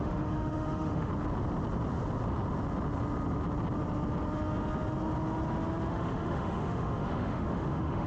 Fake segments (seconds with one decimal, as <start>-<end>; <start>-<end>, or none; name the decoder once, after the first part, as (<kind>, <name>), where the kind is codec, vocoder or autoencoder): 0.0-1.1 (autoencoder, DAC-VAE); 5.9-8.1